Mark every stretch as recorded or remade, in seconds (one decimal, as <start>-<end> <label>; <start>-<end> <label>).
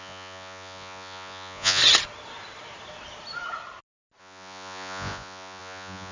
0.0-1.8 remade; 1.8-4.2 recorded; 4.2-6.1 remade